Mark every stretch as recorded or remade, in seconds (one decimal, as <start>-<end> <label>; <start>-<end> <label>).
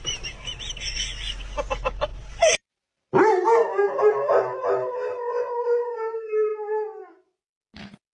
0.0-8.1 recorded